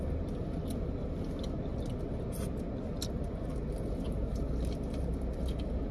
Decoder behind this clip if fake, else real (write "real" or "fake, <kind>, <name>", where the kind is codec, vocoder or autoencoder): real